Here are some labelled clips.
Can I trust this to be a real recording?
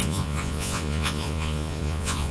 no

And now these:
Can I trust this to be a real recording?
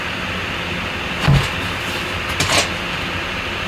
yes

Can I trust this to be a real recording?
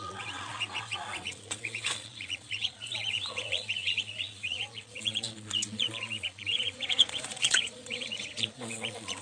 no